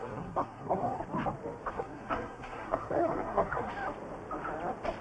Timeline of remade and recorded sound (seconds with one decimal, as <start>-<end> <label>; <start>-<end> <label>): 0.0-1.0 remade; 1.0-1.7 recorded; 1.7-3.7 remade; 3.7-5.0 recorded